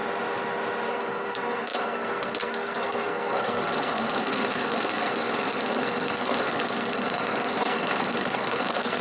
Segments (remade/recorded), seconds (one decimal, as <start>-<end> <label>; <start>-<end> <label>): 0.0-0.9 recorded; 0.9-9.0 remade